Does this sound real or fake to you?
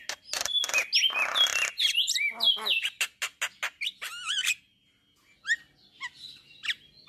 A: real